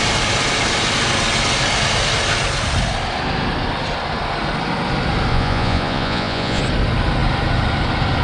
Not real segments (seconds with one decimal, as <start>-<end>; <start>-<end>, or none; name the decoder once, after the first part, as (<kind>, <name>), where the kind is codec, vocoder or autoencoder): 5.3-6.6 (vocoder, Vocos)